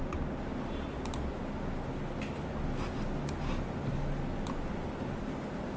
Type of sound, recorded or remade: recorded